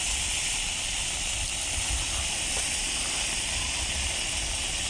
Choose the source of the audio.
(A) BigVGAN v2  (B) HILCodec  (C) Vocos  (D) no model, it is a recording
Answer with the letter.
D